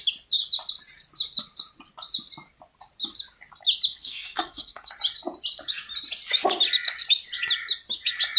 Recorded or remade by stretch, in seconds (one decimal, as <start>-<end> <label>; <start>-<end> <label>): 0.0-3.9 recorded; 3.9-4.9 remade; 4.9-8.4 recorded